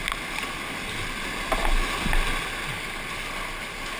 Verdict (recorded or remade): recorded